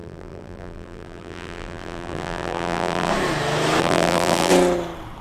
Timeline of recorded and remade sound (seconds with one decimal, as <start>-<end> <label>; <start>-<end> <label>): 0.0-3.1 remade; 3.1-3.8 recorded; 3.8-4.5 remade; 4.5-5.2 recorded